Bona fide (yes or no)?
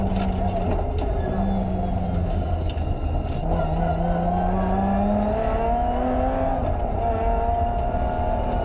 yes